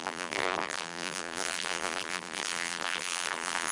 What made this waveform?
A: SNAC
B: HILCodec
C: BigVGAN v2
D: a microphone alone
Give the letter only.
C